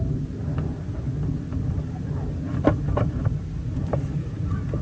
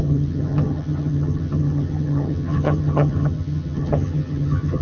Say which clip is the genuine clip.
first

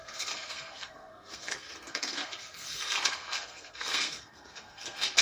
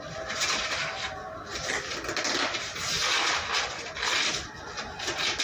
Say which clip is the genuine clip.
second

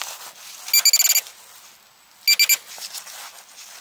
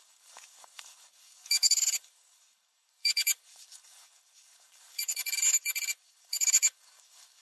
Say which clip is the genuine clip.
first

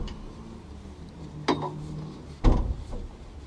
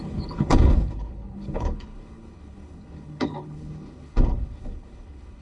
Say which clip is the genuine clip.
first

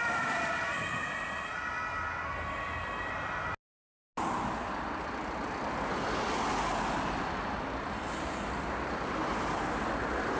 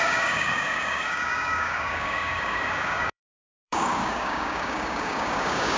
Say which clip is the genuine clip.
first